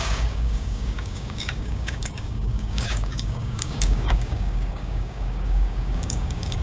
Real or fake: fake